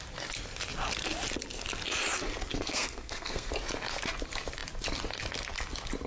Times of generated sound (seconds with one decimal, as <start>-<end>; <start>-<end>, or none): 2.5-3.5